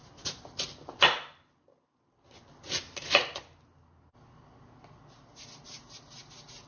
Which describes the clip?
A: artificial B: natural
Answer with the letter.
B